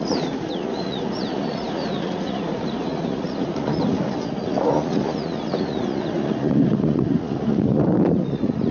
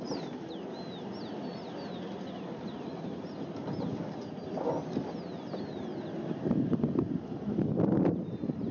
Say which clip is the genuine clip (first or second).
second